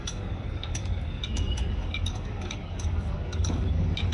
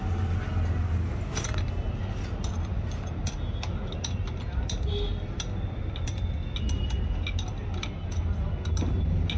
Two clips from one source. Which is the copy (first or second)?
first